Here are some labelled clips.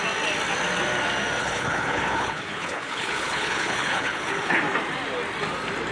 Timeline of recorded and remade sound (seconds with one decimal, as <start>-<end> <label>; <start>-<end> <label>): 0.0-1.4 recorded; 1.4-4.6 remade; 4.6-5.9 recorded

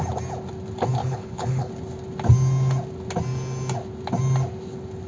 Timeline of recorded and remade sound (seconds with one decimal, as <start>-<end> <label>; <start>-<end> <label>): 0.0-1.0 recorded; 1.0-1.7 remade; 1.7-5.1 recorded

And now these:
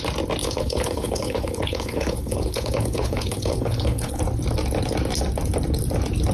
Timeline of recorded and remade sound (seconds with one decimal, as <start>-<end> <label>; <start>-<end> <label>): 0.0-0.4 recorded; 0.4-4.2 remade; 4.2-6.3 recorded

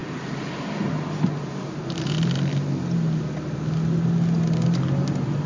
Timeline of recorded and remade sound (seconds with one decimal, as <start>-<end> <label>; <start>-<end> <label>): 0.0-5.5 recorded

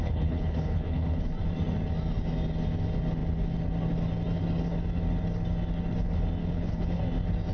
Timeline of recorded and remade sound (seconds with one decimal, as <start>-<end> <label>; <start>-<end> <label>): 0.0-1.3 remade; 1.3-6.4 recorded; 6.4-7.0 remade; 7.0-7.5 recorded

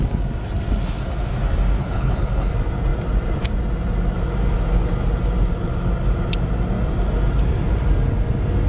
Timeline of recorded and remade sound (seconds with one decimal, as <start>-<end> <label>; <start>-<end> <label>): 0.0-1.8 recorded; 1.8-2.5 remade; 2.5-8.7 recorded

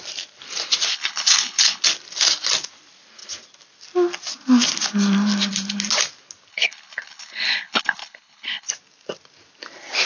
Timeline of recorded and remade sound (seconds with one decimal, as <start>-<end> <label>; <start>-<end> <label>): 0.0-0.9 recorded; 0.9-1.8 remade; 1.8-6.5 recorded; 6.5-8.7 remade; 8.7-10.1 recorded

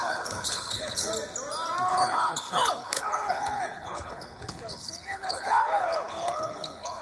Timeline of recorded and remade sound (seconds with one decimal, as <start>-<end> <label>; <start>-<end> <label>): 0.0-1.1 remade; 1.1-1.9 recorded; 1.9-7.0 remade